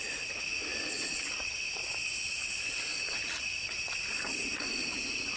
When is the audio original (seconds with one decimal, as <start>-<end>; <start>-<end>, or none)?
0.0-0.7; 1.3-5.4